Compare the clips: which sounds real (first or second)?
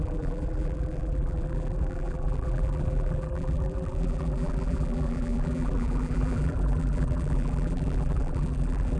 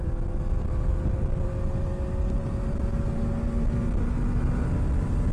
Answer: second